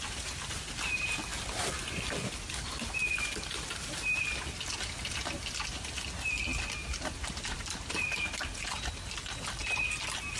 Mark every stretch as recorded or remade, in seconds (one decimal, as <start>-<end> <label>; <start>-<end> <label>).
0.0-10.4 recorded